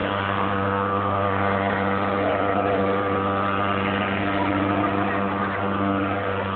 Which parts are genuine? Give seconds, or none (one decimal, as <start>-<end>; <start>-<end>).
1.7-6.6